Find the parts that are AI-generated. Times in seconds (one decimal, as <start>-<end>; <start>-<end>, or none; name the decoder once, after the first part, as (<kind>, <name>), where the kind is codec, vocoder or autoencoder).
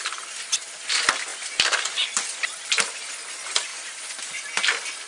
none